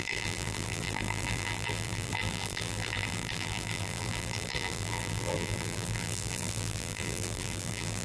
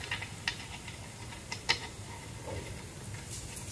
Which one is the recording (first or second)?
second